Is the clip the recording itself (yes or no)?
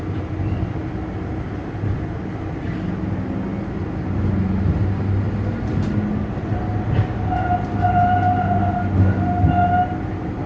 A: yes